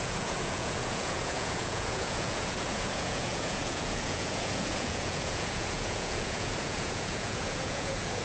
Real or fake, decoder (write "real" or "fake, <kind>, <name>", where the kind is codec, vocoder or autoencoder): fake, vocoder, Vocos